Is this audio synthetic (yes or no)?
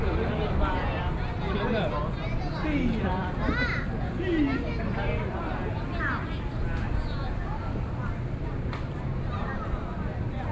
no